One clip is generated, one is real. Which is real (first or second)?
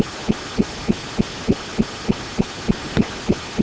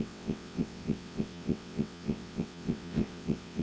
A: first